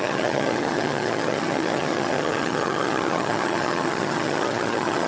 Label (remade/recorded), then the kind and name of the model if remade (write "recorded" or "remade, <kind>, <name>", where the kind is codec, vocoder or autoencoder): remade, vocoder, HiFi-GAN